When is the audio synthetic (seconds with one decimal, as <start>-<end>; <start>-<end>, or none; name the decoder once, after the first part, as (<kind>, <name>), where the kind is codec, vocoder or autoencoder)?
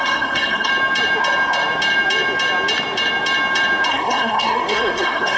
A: 0.0-0.7 (codec, SNAC); 3.9-5.4